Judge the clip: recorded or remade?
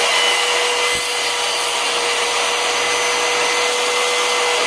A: recorded